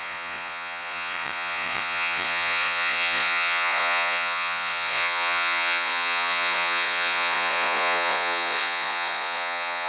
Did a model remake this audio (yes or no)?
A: yes